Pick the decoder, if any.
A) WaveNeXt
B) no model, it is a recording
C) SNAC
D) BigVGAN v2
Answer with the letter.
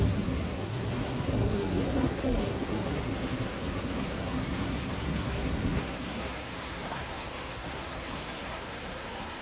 C